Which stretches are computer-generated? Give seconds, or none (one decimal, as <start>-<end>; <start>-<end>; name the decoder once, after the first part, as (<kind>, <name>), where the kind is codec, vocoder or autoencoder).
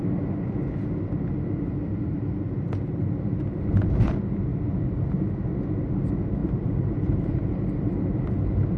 4.5-5.2 (vocoder, BigVGAN v2); 6.4-8.3